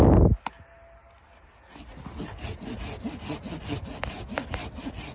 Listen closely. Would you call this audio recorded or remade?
recorded